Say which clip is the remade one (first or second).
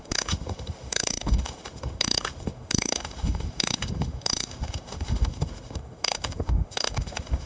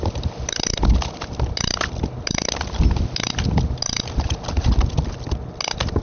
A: first